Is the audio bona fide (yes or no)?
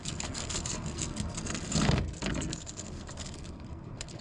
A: no